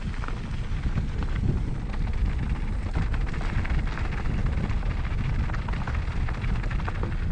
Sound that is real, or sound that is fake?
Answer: real